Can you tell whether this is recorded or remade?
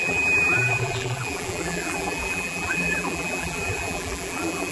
remade